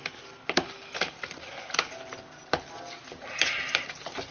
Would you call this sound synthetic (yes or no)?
no